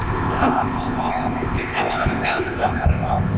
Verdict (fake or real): fake